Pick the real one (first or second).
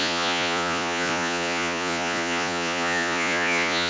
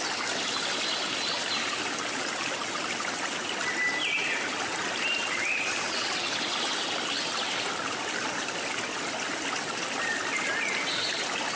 second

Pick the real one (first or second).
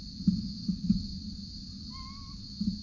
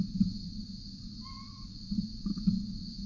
first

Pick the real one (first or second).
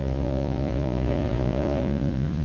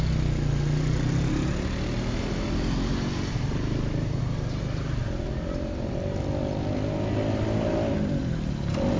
second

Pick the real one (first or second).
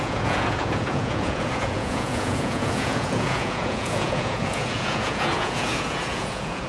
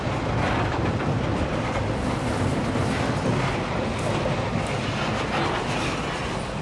second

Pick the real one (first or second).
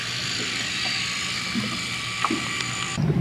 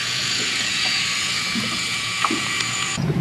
first